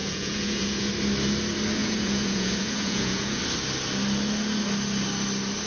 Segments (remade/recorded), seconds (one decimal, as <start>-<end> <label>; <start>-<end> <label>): 0.0-0.9 remade; 0.9-1.8 recorded; 1.8-3.4 remade; 3.4-5.7 recorded